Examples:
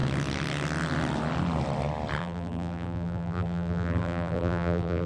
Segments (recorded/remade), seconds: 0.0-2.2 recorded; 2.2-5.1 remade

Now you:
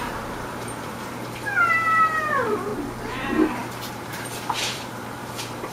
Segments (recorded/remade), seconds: 0.0-2.7 remade; 2.7-3.9 recorded; 3.9-5.7 remade

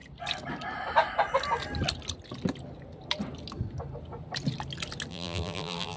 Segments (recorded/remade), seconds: 0.0-5.1 recorded; 5.1-6.0 remade

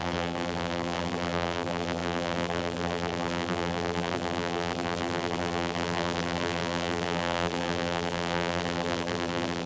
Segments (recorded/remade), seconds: 0.0-9.7 remade

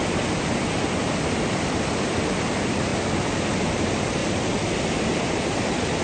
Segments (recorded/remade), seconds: 0.0-2.5 recorded; 2.5-2.9 remade; 2.9-3.6 recorded; 3.6-4.2 remade; 4.2-6.0 recorded

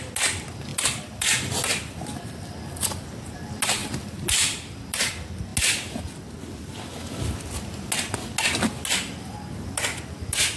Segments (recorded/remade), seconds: 0.0-0.7 recorded; 0.7-2.0 remade; 2.0-3.8 recorded; 3.8-5.1 remade; 5.1-10.6 recorded

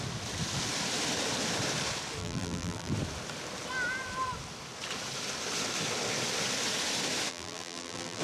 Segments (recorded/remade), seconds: 0.0-2.2 recorded; 2.2-2.9 remade; 2.9-7.3 recorded; 7.3-8.2 remade